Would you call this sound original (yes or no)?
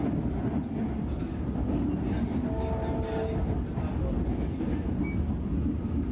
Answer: yes